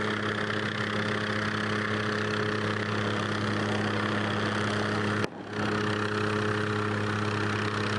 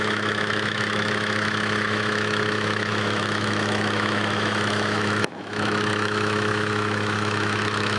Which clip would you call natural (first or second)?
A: first